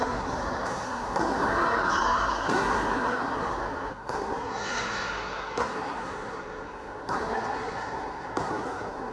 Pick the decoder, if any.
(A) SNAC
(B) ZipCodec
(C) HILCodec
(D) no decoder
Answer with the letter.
A